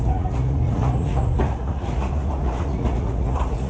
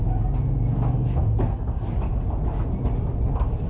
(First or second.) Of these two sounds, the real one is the second